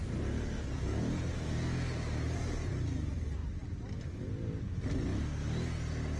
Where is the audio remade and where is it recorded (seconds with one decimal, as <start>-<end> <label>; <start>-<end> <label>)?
0.0-1.3 remade; 1.3-3.4 recorded; 3.4-4.0 remade; 4.0-6.2 recorded